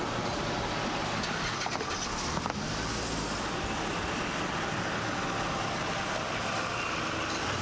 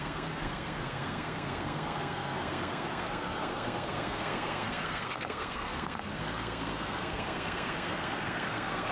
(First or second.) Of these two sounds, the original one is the first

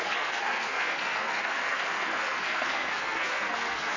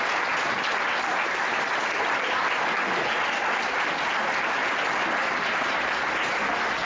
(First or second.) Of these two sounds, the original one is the second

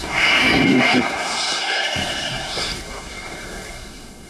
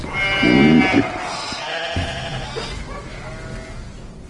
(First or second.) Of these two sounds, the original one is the second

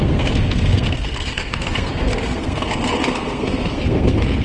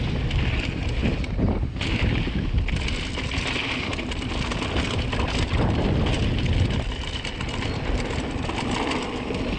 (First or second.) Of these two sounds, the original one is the second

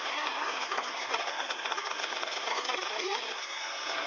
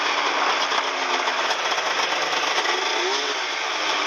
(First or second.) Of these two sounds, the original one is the second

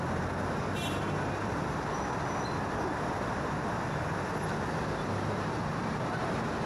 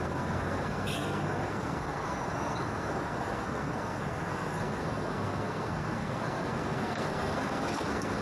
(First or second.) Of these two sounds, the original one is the first